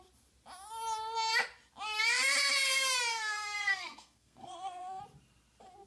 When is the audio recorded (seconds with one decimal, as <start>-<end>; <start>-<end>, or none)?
0.0-3.1; 5.0-5.9